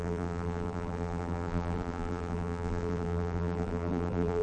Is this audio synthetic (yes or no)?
yes